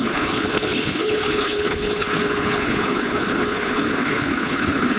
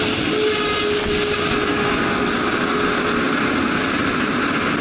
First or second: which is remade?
first